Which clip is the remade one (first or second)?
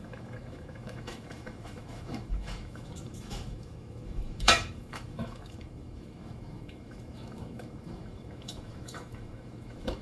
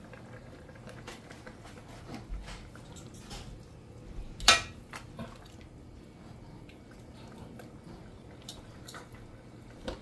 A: first